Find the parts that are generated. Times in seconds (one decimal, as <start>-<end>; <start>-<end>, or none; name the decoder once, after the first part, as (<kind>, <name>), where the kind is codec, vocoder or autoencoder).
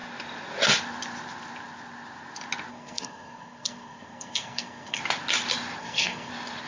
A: 2.7-5.0 (codec, SNAC); 5.8-6.3